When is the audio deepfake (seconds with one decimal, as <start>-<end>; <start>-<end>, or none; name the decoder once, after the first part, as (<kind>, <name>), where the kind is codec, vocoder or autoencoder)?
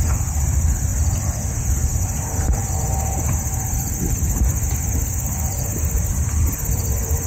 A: 0.0-0.9 (vocoder, BigVGAN v2); 1.6-7.3